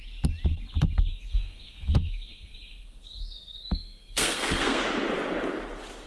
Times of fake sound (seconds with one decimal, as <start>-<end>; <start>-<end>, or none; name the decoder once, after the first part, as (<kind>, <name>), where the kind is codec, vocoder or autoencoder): 1.1-4.8 (codec, SNAC)